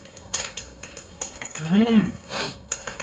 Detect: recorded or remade remade